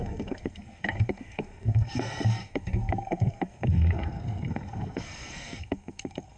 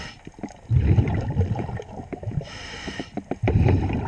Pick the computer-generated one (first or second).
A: first